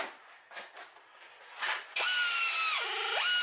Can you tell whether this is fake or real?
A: real